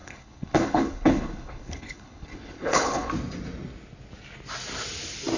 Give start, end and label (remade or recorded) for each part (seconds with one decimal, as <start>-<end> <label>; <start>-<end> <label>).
0.0-3.1 remade; 3.1-5.4 recorded